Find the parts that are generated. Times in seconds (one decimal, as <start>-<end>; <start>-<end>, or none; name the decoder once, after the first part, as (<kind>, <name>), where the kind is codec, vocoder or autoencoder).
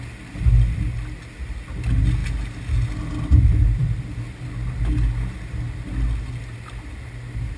none